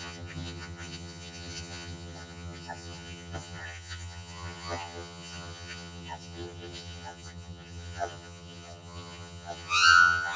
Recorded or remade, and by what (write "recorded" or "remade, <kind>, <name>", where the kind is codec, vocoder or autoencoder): remade, vocoder, HiFi-GAN